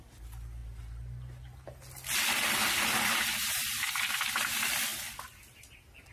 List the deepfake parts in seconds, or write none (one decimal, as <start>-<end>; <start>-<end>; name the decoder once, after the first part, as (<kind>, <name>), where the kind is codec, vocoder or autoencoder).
none